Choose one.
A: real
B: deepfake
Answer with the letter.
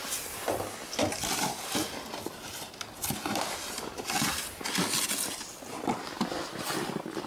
A